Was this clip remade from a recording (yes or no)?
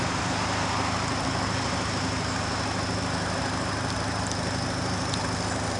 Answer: no